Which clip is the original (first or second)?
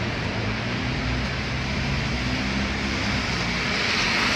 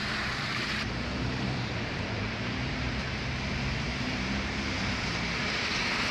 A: first